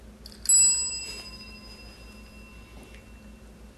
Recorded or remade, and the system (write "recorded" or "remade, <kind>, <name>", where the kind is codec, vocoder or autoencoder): recorded